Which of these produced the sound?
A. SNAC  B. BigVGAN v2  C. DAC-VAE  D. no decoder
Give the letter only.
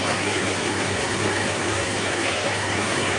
A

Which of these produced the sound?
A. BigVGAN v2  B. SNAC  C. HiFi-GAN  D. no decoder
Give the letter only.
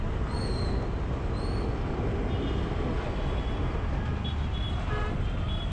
D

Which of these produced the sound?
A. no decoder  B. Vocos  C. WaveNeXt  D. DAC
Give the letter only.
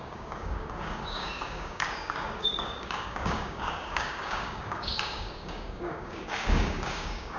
D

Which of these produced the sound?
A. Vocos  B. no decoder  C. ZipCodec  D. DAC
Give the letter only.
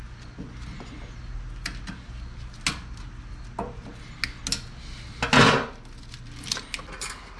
B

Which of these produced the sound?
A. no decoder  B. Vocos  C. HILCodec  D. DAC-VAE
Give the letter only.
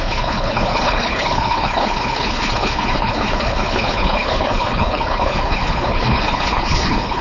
C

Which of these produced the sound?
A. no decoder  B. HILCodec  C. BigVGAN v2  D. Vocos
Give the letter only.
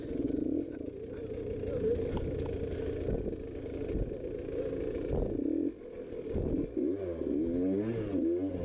A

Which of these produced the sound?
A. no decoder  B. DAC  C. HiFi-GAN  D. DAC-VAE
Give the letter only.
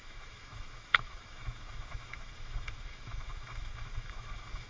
D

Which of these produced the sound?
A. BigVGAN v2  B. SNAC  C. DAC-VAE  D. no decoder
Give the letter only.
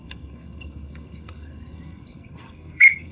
B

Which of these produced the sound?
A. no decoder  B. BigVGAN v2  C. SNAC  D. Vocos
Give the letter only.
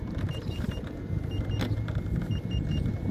A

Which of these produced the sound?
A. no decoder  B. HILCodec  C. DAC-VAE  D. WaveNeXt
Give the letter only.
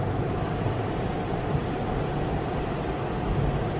A